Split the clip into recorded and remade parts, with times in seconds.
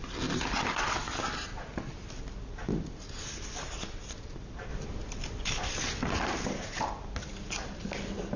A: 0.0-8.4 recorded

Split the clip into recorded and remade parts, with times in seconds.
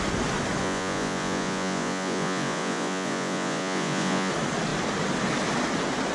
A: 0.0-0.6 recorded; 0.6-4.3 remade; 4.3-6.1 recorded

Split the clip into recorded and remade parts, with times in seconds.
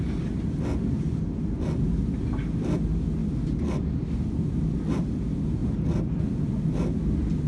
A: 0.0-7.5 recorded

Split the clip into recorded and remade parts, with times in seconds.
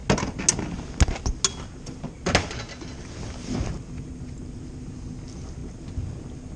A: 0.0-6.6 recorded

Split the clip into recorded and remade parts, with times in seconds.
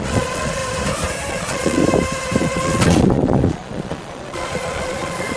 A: 0.0-0.6 remade; 0.6-1.3 recorded; 1.3-1.8 remade; 1.8-2.4 recorded; 2.4-5.4 remade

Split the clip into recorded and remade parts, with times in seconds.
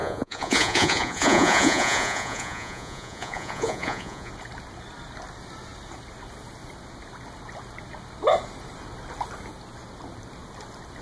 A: 0.0-4.3 remade; 4.3-11.0 recorded